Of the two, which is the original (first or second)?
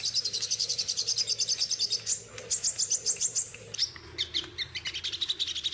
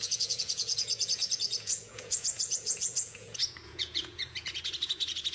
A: first